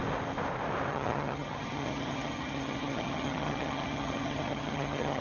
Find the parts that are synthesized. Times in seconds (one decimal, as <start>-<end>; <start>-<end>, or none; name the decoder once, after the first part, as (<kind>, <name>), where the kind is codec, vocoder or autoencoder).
0.9-5.2 (vocoder, HiFi-GAN)